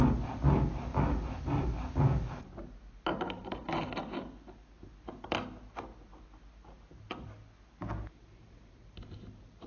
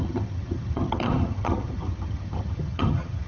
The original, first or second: first